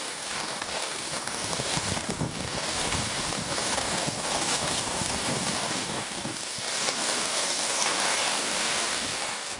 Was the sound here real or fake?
fake